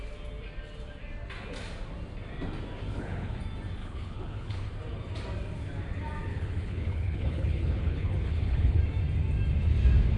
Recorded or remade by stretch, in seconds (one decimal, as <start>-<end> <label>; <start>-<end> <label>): 0.0-2.9 recorded; 2.9-3.4 remade; 3.4-3.8 recorded; 3.8-4.7 remade; 4.7-6.3 recorded; 6.3-8.8 remade; 8.8-10.2 recorded